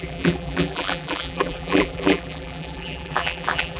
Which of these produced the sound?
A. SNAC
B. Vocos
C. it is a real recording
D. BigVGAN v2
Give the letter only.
D